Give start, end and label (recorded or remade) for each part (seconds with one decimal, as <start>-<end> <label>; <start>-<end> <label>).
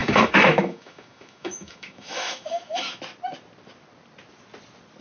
0.0-3.0 remade; 3.0-5.0 recorded